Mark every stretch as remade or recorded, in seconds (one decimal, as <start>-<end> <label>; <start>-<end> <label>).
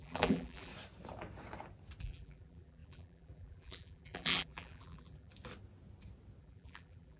0.0-0.7 remade; 0.7-2.0 recorded; 2.0-5.3 remade; 5.3-6.4 recorded; 6.4-7.2 remade